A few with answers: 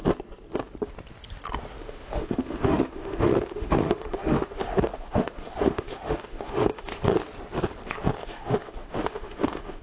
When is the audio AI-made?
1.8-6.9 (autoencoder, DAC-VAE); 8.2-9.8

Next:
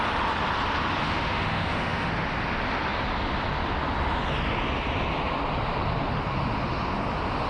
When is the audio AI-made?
1.0-2.1 (autoencoder, DAC-VAE)